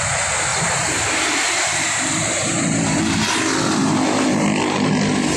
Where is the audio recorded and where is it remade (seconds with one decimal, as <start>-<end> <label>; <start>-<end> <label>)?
0.0-0.5 recorded; 0.5-3.0 remade; 3.0-3.8 recorded; 3.8-4.9 remade; 4.9-5.4 recorded